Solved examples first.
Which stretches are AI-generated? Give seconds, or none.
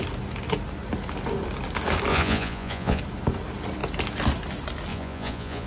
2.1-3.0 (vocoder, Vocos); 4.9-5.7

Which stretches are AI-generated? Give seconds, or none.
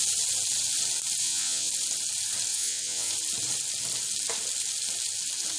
1.2-1.7 (vocoder, WaveNeXt); 2.5-3.1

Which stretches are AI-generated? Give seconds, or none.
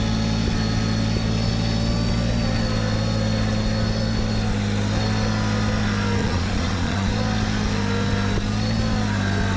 6.2-7.1 (vocoder, Vocos)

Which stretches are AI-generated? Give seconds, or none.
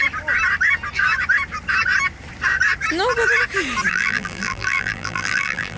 3.9-5.8 (vocoder, BigVGAN v2)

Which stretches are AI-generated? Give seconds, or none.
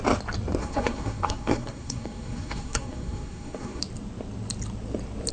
0.6-3.8 (codec, SNAC)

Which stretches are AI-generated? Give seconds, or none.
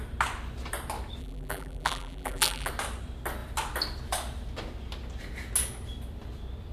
1.2-2.7 (vocoder, BigVGAN v2)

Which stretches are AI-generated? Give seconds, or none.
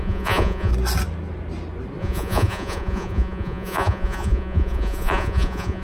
0.0-0.7 (vocoder, Vocos); 2.0-5.8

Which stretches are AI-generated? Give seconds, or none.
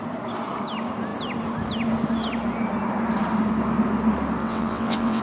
4.4-5.2 (vocoder, WaveNeXt)